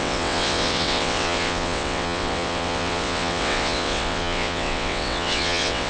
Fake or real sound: fake